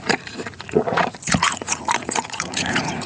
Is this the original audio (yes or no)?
no